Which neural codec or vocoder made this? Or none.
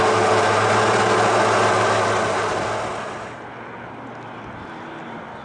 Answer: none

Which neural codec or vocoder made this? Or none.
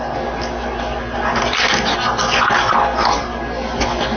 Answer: none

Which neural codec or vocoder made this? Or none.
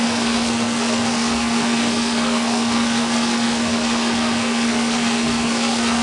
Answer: codec, SNAC